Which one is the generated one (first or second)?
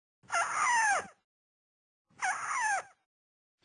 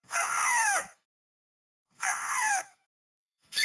second